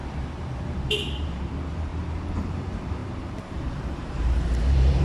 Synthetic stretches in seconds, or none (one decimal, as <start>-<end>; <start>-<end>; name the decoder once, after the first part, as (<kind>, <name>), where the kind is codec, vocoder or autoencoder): 0.0-1.9 (vocoder, BigVGAN v2); 2.5-5.0